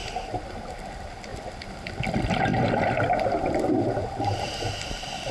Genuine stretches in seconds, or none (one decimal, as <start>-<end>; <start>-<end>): 0.9-1.3; 2.0-2.5; 4.7-5.3